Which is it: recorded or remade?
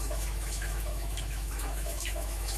remade